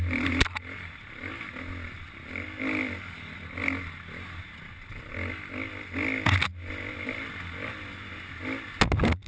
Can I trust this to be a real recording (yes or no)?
yes